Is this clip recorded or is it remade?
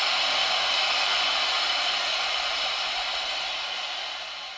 recorded